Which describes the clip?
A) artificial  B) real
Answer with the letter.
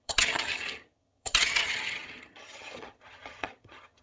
A